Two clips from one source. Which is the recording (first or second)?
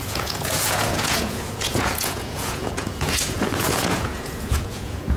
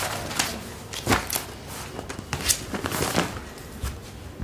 second